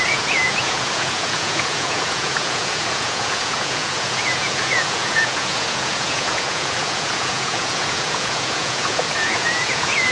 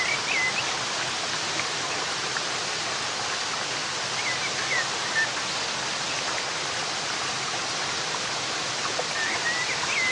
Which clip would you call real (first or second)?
second